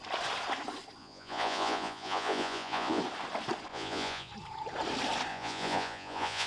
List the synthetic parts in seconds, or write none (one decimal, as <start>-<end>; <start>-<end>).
1.0-3.0; 3.7-4.3; 5.3-6.5

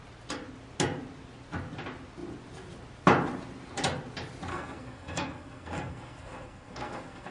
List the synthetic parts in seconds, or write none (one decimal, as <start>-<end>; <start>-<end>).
4.5-7.3

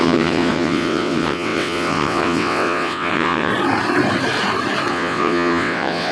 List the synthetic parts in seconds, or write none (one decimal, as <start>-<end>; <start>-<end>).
0.0-3.5; 4.9-6.1

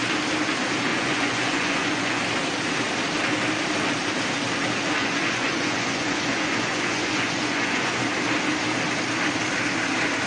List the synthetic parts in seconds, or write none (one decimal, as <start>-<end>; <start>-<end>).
0.9-2.2; 5.0-8.0

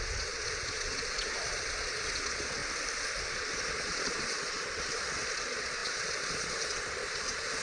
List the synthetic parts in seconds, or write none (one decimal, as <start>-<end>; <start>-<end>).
0.0-2.6; 3.2-7.6

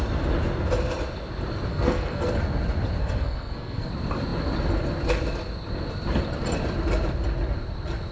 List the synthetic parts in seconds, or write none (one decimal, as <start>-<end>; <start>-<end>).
1.7-2.3; 3.0-3.9